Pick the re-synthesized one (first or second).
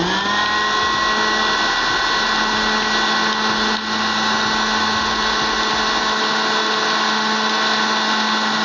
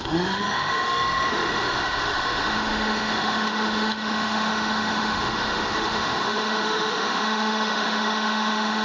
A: second